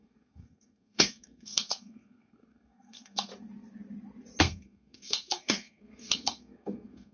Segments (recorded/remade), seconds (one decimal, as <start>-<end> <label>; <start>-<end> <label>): 0.0-3.3 remade; 3.3-4.4 recorded; 4.4-7.1 remade